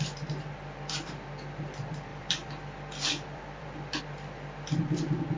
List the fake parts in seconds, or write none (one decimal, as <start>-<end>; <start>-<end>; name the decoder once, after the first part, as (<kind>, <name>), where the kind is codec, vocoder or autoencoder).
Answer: 2.1-4.0 (vocoder, BigVGAN v2)